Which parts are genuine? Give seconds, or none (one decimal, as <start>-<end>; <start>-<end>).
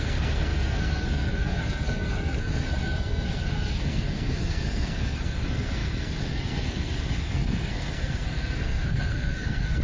none